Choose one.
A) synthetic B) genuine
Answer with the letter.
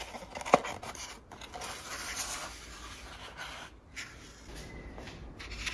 B